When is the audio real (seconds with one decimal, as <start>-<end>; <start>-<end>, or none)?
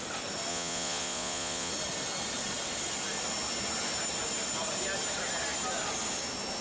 0.0-0.5; 1.7-6.6